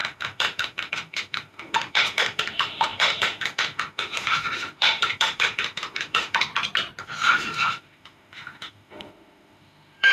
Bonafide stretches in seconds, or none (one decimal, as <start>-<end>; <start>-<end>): 6.5-7.0